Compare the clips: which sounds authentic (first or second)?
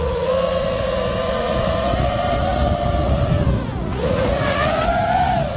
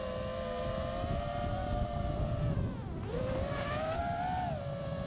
second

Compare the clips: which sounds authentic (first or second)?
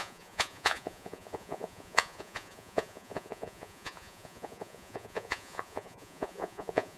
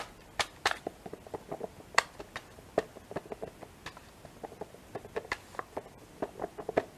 second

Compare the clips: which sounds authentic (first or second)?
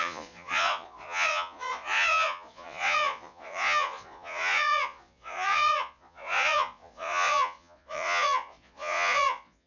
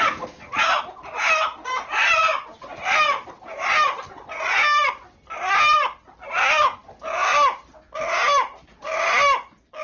second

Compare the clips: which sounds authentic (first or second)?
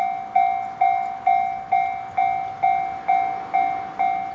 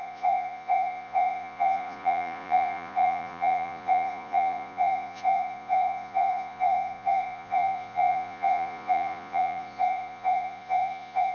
first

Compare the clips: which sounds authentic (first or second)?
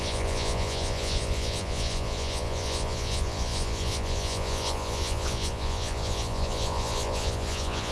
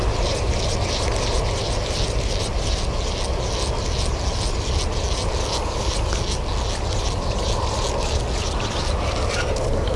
second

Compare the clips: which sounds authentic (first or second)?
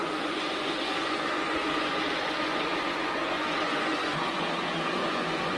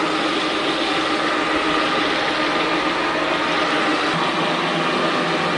second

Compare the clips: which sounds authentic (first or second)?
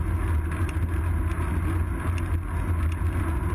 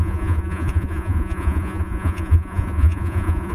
first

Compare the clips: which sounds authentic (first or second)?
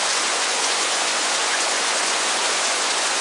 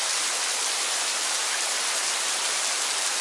second